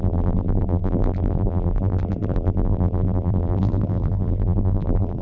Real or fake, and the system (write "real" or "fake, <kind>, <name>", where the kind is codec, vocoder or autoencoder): fake, vocoder, BigVGAN v2